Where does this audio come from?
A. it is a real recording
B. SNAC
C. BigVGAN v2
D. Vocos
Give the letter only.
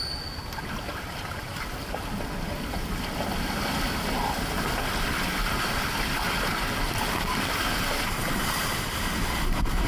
A